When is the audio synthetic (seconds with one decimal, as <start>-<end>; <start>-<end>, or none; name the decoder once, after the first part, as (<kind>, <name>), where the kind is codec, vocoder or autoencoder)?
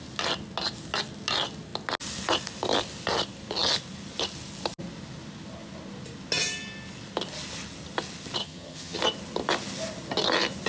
8.4-9.0 (vocoder, HiFi-GAN)